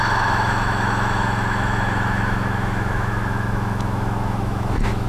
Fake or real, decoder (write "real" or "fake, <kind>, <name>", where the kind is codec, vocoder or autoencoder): fake, autoencoder, DAC-VAE